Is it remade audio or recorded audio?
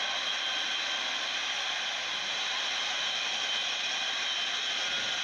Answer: recorded